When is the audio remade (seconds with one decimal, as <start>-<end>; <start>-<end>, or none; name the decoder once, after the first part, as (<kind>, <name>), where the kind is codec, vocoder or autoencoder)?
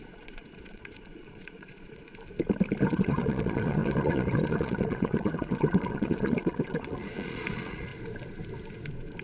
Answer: 0.0-2.1 (vocoder, Vocos); 2.9-7.9